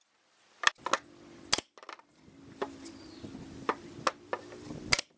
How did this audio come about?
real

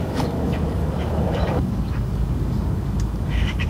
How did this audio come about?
fake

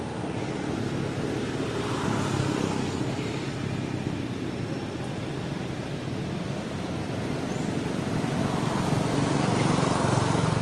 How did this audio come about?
real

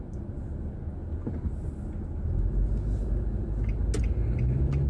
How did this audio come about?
real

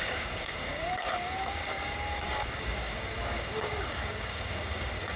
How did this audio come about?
fake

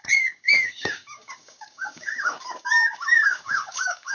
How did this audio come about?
fake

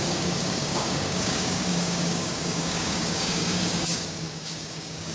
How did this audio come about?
fake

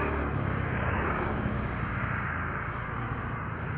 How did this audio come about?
fake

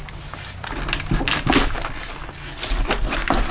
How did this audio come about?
real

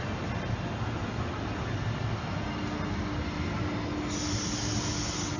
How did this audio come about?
real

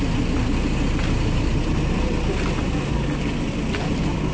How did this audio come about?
real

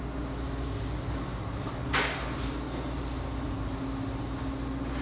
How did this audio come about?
real